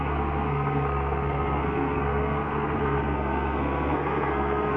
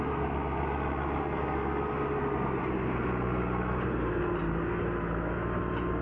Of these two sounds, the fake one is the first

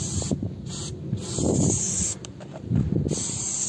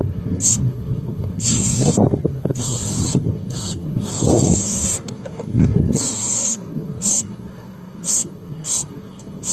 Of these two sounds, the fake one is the second